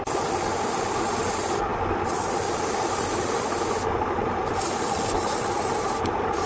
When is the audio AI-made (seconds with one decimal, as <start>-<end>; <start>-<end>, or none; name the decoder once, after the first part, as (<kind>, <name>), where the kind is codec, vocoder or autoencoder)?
none